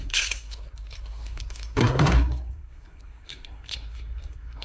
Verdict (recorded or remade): remade